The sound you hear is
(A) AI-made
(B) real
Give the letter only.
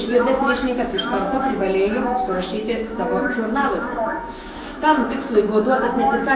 A